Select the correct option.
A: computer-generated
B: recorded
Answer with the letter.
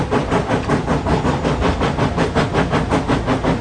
B